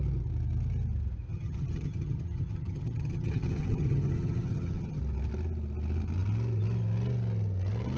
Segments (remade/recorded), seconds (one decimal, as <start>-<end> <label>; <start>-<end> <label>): 0.0-1.3 recorded; 1.3-5.0 remade; 5.0-8.0 recorded